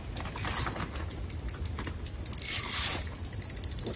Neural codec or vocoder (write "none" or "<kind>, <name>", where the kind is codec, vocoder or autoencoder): none